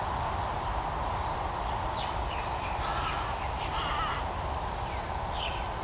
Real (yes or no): yes